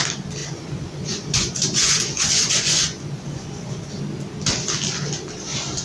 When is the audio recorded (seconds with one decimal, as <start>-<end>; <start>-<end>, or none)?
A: 0.0-0.4; 3.9-5.8